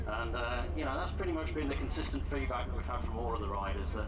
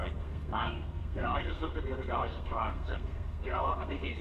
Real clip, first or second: first